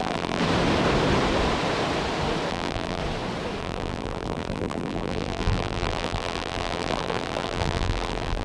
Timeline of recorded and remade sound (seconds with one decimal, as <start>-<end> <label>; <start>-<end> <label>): 0.0-0.4 remade; 0.4-2.5 recorded; 2.5-3.0 remade; 3.0-3.6 recorded; 3.6-8.4 remade